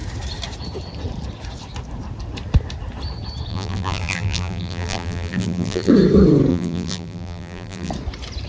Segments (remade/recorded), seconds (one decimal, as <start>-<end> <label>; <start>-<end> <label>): 0.0-3.5 recorded; 3.5-5.9 remade; 5.9-6.5 recorded; 6.5-7.9 remade; 7.9-8.5 recorded